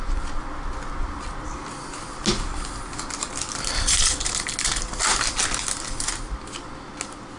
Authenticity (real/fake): real